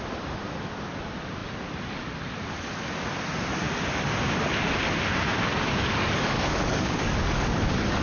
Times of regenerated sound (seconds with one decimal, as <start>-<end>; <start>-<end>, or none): 5.5-8.0